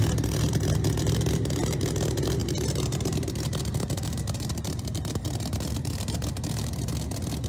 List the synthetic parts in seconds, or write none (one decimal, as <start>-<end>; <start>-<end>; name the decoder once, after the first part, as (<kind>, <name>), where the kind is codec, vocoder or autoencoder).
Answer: 2.4-6.9 (vocoder, BigVGAN v2)